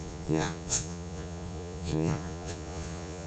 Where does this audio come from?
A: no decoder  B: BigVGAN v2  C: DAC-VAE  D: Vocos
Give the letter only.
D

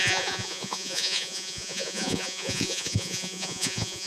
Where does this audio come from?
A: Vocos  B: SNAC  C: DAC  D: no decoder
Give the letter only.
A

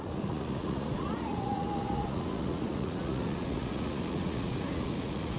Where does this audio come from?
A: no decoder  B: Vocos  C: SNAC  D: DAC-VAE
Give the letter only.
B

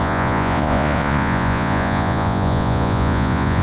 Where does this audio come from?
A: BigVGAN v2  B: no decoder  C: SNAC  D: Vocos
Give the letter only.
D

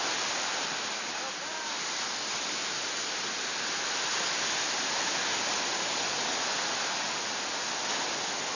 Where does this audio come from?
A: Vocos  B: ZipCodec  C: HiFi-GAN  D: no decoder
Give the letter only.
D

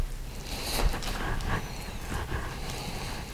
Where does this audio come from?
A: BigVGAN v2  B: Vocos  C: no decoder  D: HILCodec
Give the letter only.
C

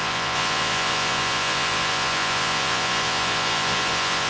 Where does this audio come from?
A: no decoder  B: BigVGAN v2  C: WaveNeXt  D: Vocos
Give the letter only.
D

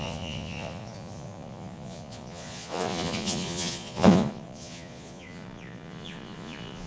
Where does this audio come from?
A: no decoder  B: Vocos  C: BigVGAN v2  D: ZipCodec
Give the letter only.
B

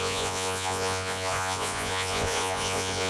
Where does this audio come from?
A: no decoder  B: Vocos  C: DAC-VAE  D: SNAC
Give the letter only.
B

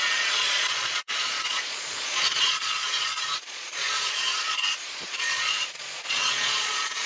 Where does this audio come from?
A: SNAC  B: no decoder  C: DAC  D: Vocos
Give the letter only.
D